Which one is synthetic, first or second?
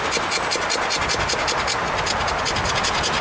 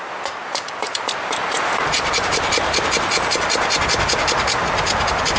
second